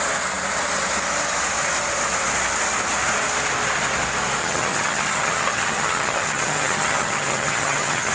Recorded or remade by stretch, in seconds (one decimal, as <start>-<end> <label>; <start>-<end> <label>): 0.0-4.4 recorded; 4.4-8.1 remade